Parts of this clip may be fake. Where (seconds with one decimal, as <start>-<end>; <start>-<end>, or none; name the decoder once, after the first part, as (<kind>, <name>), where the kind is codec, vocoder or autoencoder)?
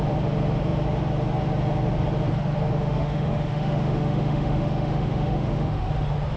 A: 2.7-5.9 (autoencoder, DAC-VAE)